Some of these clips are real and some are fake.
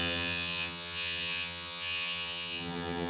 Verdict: fake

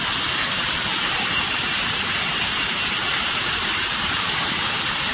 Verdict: fake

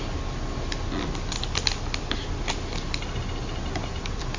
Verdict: real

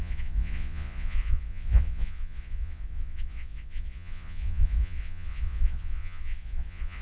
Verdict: fake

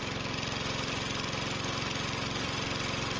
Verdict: fake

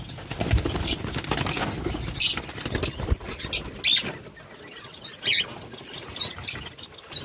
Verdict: real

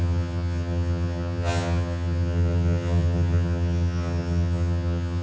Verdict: fake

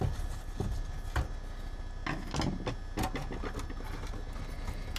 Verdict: real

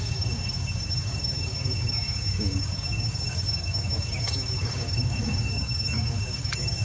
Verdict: fake